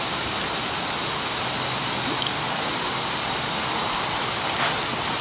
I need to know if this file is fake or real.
real